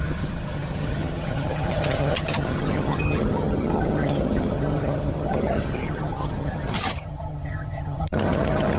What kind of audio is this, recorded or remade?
remade